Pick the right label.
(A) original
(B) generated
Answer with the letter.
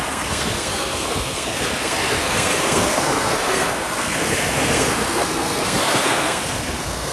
B